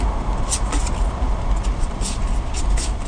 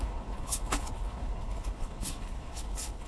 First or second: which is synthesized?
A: second